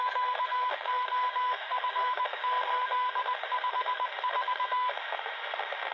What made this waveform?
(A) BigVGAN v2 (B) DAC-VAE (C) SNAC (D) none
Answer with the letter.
B